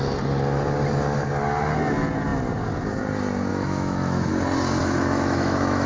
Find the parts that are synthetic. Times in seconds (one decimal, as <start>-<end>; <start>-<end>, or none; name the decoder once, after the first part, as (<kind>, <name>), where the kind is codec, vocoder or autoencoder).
3.5-4.3 (autoencoder, DAC-VAE); 4.8-5.9